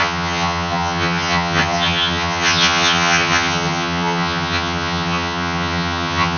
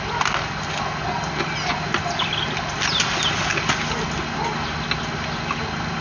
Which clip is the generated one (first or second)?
first